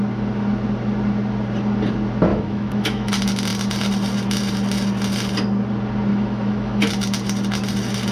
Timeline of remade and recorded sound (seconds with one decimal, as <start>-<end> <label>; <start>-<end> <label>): 0.0-2.3 recorded; 2.3-3.1 remade; 3.1-6.1 recorded; 6.1-6.9 remade; 6.9-8.1 recorded